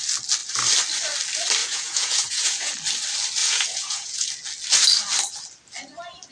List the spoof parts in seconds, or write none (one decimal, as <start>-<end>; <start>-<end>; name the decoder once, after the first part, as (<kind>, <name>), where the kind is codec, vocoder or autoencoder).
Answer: 1.6-2.7 (vocoder, Vocos); 3.4-4.3